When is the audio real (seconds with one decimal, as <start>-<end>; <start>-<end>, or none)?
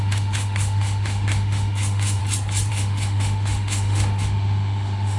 2.2-2.7